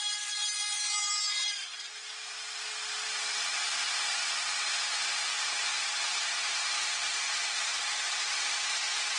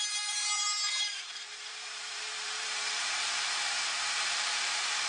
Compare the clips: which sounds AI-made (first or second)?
second